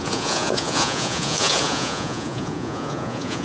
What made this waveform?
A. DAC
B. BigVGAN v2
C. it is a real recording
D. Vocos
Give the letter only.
D